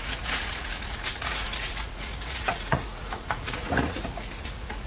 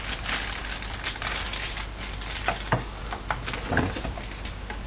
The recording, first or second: second